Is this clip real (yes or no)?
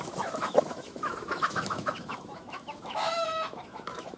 no